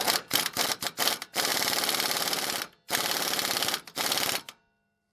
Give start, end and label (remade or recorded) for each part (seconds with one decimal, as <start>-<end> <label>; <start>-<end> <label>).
0.0-5.1 recorded